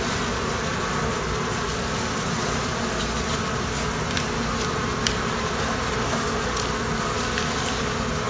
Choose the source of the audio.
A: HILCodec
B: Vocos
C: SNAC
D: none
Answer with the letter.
D